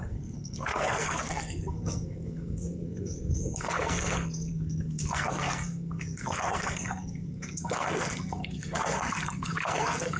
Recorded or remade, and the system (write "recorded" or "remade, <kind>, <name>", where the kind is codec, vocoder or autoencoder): remade, codec, SNAC